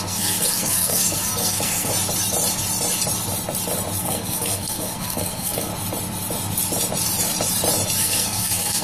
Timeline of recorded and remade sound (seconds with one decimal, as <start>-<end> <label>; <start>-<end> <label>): 0.0-1.9 remade; 1.9-4.0 recorded; 4.0-5.7 remade; 5.7-8.0 recorded; 8.0-8.8 remade